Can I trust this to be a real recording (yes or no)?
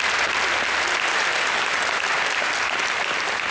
yes